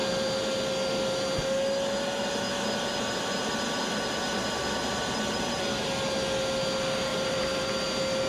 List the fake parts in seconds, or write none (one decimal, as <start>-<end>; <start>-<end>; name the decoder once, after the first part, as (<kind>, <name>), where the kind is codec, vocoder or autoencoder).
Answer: 7.1-7.7 (vocoder, BigVGAN v2)